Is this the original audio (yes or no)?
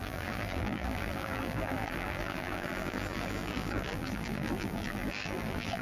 no